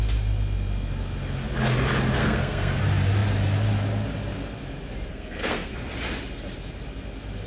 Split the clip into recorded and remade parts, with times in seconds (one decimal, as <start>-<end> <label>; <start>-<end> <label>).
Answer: 0.0-2.2 recorded; 2.2-2.8 remade; 2.8-5.1 recorded; 5.1-5.7 remade; 5.7-7.5 recorded